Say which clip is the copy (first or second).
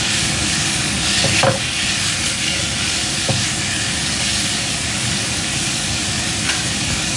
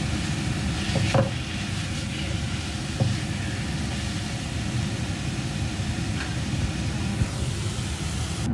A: first